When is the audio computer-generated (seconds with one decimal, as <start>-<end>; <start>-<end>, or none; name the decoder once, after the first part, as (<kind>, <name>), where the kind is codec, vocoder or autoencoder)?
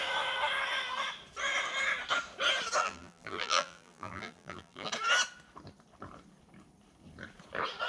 2.8-4.9 (vocoder, BigVGAN v2)